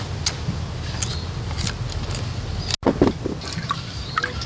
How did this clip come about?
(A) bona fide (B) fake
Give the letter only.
A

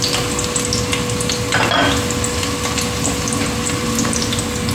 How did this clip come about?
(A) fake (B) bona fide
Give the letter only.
B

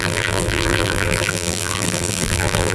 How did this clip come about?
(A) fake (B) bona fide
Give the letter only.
A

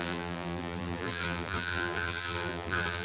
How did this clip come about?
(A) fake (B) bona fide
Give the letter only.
A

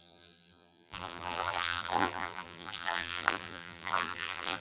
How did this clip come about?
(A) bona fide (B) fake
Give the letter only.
B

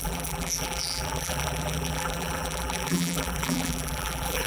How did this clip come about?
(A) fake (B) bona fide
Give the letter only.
A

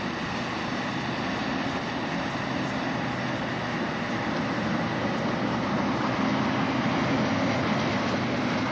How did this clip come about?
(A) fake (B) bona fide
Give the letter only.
B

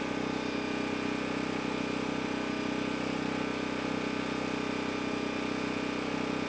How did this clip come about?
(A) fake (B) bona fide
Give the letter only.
B